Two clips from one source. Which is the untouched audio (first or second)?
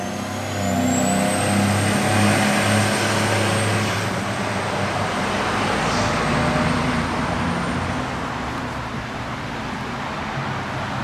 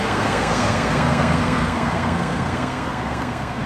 first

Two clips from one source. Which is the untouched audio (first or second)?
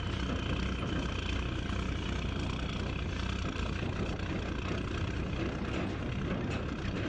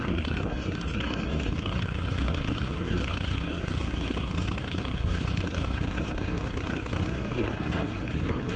first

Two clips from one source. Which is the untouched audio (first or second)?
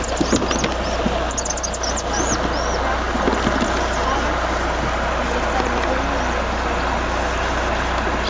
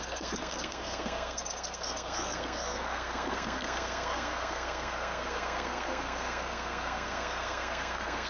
first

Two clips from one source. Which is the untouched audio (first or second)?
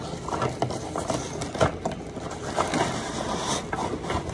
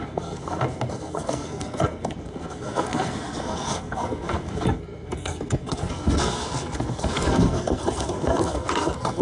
first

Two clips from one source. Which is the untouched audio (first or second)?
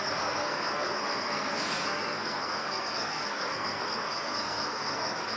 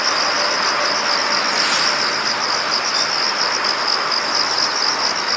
second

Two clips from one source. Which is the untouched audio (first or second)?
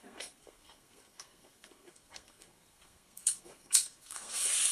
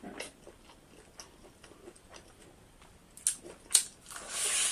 second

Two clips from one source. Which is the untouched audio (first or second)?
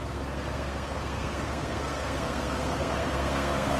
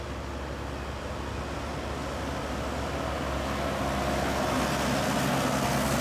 second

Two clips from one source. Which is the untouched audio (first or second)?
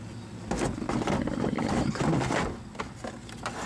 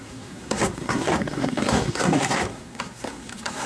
first